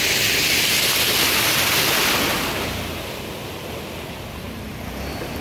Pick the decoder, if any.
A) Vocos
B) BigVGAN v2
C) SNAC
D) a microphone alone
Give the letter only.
D